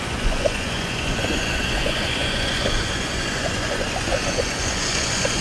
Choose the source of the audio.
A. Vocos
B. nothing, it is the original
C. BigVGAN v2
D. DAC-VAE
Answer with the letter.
A